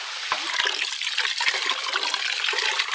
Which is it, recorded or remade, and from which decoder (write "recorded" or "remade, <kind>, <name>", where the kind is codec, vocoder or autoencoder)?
recorded